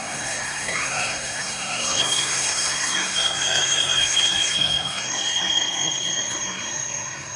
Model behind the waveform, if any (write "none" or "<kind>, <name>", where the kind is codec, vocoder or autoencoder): codec, SNAC